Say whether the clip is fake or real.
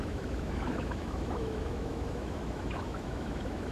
fake